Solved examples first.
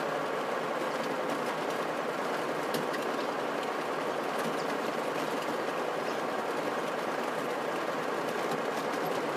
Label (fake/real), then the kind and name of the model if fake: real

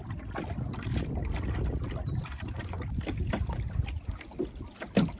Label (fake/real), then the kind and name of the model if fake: real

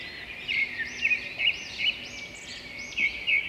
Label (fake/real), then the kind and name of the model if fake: real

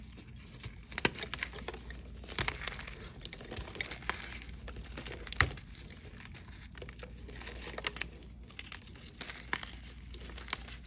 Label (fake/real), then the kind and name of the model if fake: real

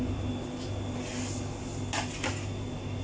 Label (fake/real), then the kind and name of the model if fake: real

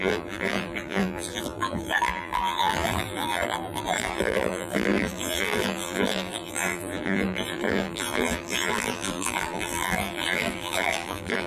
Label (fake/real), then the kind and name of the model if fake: fake, vocoder, BigVGAN v2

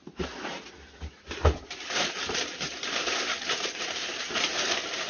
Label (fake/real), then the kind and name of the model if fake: fake, vocoder, BigVGAN v2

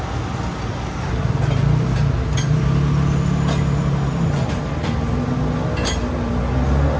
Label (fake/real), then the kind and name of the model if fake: real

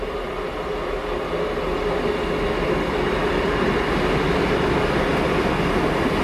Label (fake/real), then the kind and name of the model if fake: real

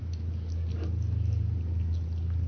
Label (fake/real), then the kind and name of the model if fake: real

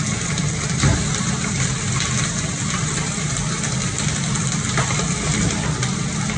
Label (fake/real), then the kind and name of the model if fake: real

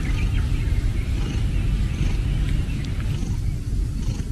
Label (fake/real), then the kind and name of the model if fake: real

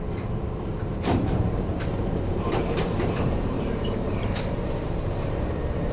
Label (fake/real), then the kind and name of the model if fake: fake, vocoder, BigVGAN v2